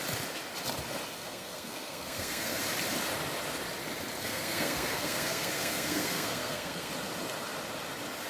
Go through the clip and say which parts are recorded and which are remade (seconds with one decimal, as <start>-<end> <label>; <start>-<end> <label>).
0.0-1.2 recorded; 1.2-2.6 remade; 2.6-4.2 recorded; 4.2-6.9 remade; 6.9-8.3 recorded